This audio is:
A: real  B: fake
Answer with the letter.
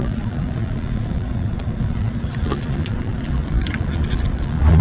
B